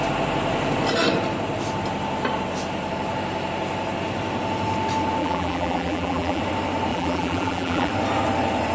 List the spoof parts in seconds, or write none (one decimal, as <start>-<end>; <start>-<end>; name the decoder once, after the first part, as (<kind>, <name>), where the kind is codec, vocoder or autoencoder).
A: 5.2-6.4 (vocoder, BigVGAN v2); 6.9-7.9